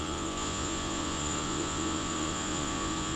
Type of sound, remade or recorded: remade